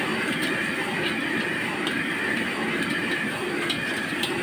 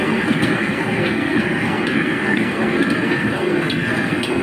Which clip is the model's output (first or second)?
second